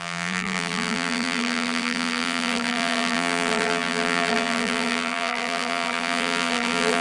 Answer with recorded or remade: remade